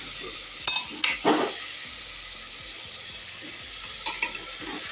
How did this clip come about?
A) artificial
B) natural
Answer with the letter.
B